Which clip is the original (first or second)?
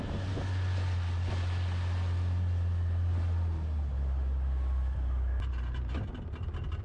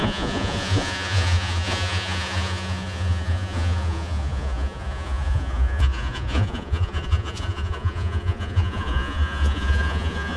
first